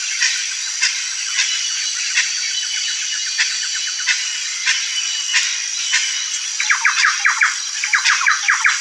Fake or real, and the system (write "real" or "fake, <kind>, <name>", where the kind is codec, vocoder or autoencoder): real